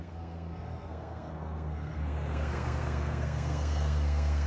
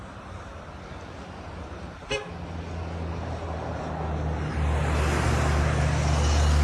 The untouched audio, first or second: second